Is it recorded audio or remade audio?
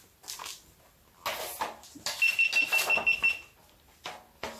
recorded